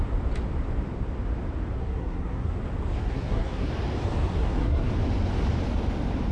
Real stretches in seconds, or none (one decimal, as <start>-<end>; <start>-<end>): 0.0-1.8; 2.5-3.0; 3.7-4.3; 4.9-6.3